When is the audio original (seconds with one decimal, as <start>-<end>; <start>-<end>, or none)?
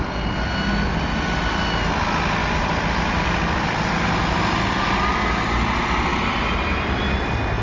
0.0-2.4; 5.3-6.1; 6.8-7.6